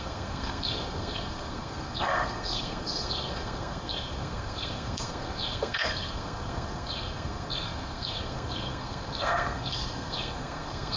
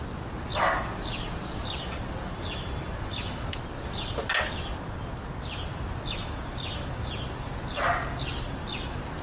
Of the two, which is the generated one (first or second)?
first